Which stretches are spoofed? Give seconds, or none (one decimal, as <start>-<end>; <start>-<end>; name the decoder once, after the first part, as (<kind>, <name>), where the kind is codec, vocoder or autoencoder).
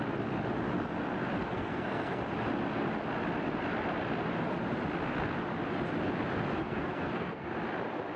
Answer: 1.4-2.2 (codec, SNAC); 6.6-7.5